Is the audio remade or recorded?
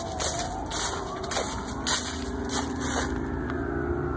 recorded